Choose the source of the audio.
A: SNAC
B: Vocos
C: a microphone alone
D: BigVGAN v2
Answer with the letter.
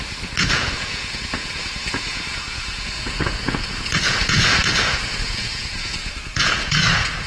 B